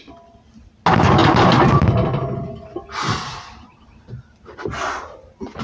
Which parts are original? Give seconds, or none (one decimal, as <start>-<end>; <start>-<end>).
0.0-5.6